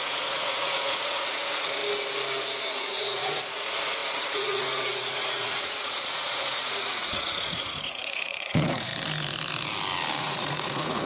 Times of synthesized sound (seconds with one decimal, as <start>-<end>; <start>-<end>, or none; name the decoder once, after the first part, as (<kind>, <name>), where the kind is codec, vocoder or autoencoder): 0.0-1.8 (vocoder, Vocos); 2.7-8.9; 10.2-11.1